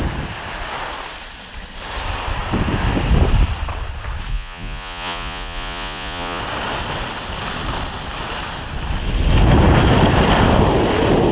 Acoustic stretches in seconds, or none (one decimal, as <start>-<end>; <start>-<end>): 0.0-4.3; 6.4-11.3